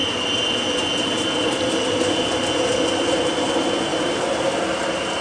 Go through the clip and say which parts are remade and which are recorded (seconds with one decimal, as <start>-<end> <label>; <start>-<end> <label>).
0.0-3.9 recorded; 3.9-4.4 remade; 4.4-5.2 recorded